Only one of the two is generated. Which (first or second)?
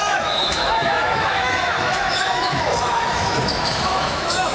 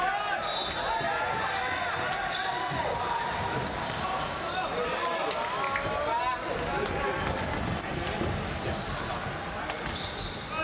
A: first